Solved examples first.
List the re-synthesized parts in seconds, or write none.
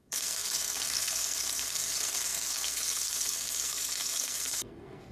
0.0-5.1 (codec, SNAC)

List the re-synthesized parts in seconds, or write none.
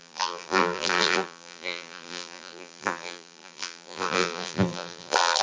0.0-5.4 (vocoder, BigVGAN v2)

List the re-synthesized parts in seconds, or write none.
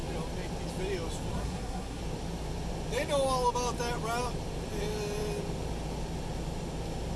1.3-2.0 (codec, SNAC)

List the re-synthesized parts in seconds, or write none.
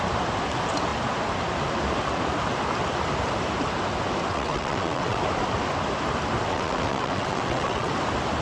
4.3-5.2 (vocoder, WaveNeXt); 6.5-7.9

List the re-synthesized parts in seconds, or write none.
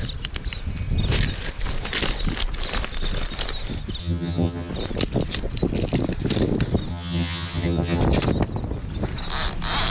4.0-4.7 (vocoder, HiFi-GAN); 6.9-8.0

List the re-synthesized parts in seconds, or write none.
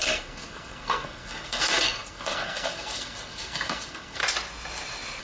0.0-4.2 (codec, SNAC)